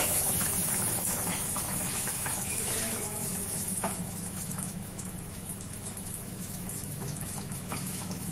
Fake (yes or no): yes